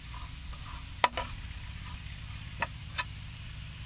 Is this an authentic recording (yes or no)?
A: no